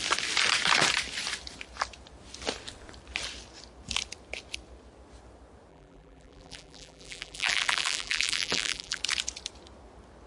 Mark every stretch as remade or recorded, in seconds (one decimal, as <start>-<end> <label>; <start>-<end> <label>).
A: 0.0-5.7 recorded; 5.7-9.0 remade; 9.0-10.3 recorded